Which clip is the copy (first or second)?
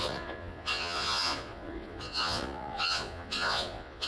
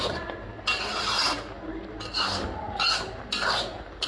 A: first